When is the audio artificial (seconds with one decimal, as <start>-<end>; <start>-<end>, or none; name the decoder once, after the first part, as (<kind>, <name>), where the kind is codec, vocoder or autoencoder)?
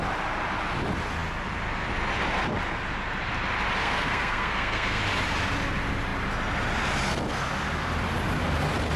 3.8-5.0 (codec, SNAC)